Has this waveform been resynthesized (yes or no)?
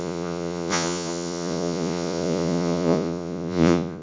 yes